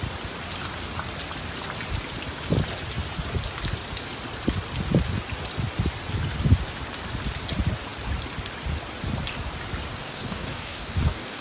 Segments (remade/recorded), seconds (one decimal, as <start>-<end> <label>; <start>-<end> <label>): 0.0-9.9 recorded; 9.9-11.4 remade